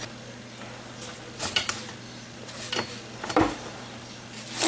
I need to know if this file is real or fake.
real